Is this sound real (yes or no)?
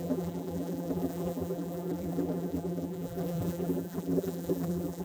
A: no